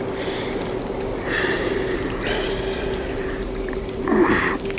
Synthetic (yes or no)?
no